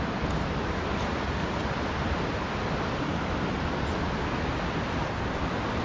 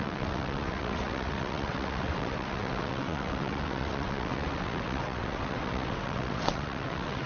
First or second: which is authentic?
first